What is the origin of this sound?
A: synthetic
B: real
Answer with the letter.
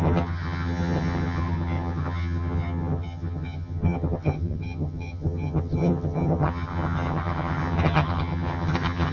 A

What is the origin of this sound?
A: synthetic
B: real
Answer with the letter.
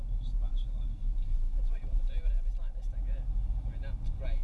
B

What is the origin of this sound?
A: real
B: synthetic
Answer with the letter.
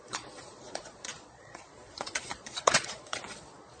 B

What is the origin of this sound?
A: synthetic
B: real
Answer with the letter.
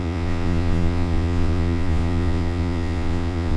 A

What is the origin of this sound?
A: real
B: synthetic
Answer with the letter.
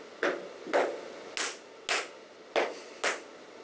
A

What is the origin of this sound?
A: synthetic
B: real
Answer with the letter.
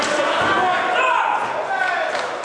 B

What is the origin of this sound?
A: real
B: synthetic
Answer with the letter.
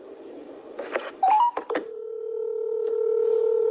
B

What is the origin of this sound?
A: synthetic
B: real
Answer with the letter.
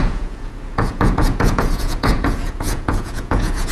A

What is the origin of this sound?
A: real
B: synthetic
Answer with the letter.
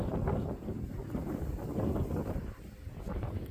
A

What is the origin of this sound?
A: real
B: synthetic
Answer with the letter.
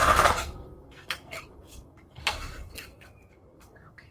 B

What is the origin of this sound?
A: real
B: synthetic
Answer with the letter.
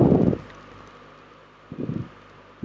A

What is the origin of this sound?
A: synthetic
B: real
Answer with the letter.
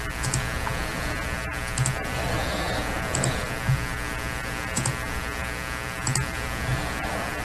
B